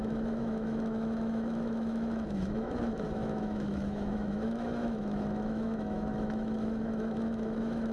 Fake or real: fake